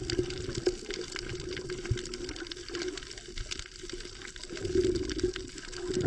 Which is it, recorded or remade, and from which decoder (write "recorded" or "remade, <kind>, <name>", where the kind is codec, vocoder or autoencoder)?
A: recorded